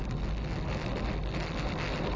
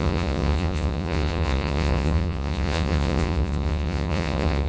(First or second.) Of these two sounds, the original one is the first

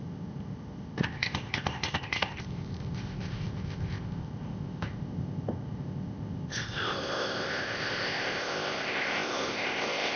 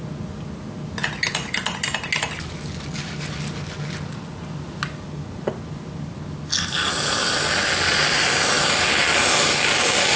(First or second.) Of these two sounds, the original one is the second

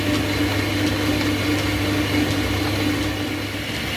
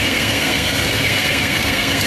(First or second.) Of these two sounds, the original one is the first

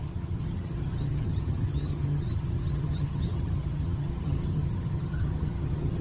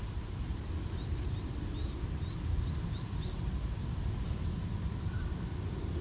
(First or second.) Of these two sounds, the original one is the second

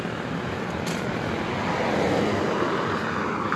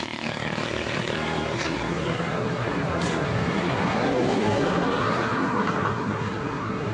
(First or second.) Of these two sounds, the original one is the first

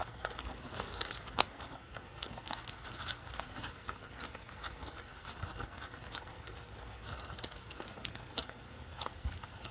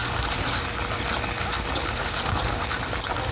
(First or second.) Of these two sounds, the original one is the second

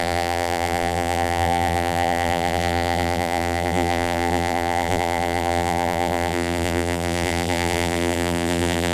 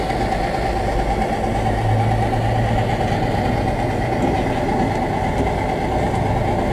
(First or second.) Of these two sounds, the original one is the second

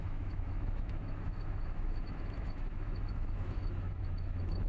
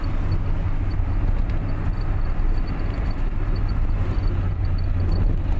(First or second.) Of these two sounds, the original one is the second